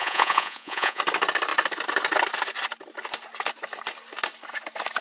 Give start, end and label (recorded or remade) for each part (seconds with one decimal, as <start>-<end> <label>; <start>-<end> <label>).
0.0-1.0 remade; 1.0-5.0 recorded